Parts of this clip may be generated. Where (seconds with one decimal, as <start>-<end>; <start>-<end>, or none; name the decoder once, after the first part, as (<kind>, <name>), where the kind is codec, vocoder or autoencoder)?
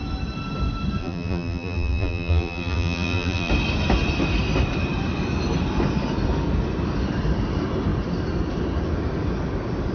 1.0-3.5 (vocoder, BigVGAN v2)